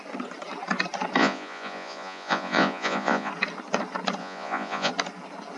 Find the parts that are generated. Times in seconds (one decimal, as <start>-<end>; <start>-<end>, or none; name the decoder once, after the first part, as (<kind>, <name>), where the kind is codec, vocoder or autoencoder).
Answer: 1.2-3.3 (vocoder, Vocos); 4.2-4.9